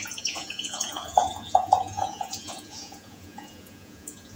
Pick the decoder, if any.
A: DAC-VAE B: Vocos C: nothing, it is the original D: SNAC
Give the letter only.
B